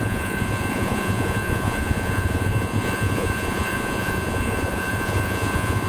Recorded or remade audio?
remade